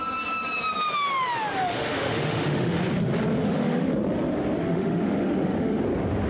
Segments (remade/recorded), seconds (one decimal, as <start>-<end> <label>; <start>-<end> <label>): 0.0-1.6 recorded; 1.6-2.8 remade; 2.8-3.4 recorded; 3.4-3.9 remade; 3.9-4.6 recorded; 4.6-5.8 remade; 5.8-6.3 recorded